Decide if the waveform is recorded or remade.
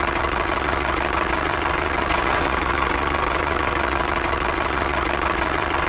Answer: remade